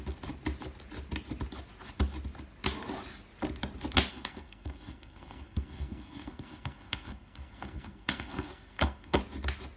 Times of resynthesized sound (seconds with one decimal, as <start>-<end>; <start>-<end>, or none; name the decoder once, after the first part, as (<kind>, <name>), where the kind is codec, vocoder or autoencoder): 4.1-9.2 (codec, SNAC)